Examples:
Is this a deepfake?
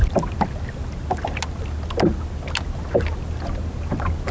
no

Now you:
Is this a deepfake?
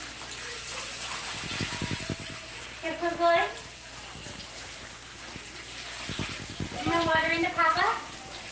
yes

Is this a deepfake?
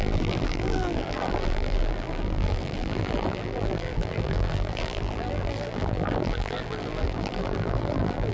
yes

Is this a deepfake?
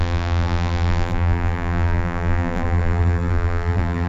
yes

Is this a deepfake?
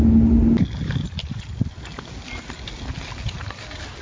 no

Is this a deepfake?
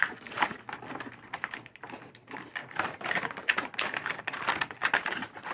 no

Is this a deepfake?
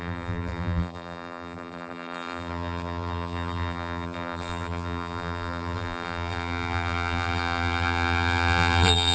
yes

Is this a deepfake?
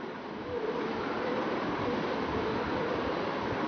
yes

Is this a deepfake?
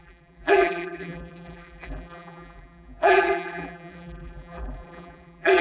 yes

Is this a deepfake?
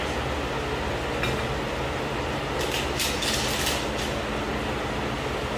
no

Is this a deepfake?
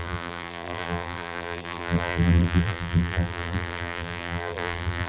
yes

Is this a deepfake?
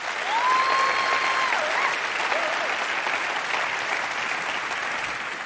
no